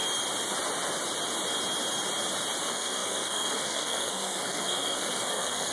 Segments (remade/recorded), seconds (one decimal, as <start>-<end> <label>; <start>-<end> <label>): 0.0-2.6 recorded; 2.6-5.7 remade